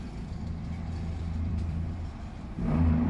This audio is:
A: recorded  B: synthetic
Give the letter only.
B